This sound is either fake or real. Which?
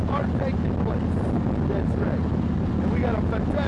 real